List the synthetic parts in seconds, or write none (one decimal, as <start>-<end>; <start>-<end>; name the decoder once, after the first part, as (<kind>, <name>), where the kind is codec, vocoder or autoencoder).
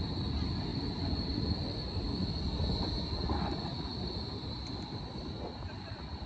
0.7-2.4 (vocoder, BigVGAN v2); 3.9-4.6